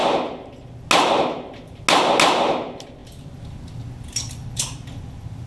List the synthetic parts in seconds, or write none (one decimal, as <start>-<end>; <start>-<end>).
3.0-5.5